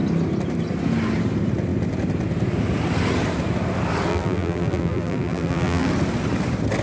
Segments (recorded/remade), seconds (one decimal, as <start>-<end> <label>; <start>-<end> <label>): 0.0-4.1 recorded; 4.1-5.9 remade; 5.9-6.8 recorded